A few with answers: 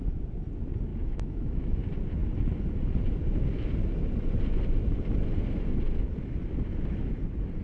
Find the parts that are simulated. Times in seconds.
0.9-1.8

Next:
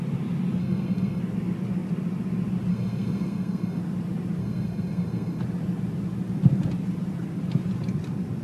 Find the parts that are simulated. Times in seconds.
0.6-1.2; 2.7-3.8; 4.4-5.4

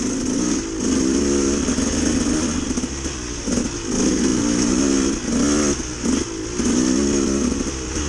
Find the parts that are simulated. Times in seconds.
none

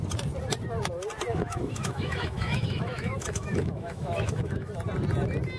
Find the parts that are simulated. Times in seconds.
1.3-4.7

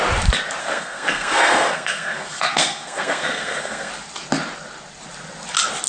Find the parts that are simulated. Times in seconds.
0.6-3.9

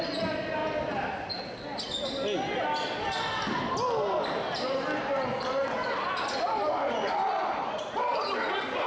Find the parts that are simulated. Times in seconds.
none

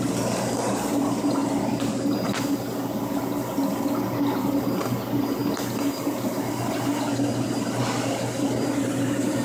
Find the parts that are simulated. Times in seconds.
none

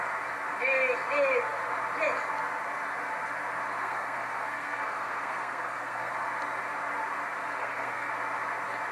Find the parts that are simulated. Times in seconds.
3.8-6.1; 7.6-8.1